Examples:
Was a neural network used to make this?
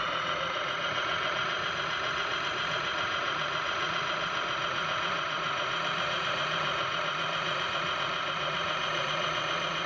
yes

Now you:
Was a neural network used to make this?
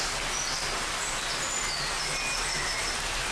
no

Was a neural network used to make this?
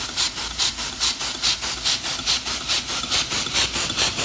no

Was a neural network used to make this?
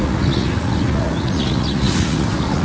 yes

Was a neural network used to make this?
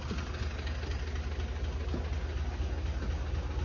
no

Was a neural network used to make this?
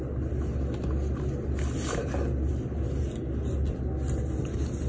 no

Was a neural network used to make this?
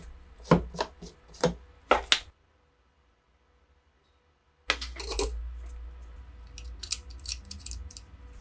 no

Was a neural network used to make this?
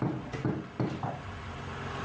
no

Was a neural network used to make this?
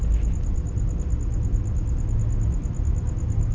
no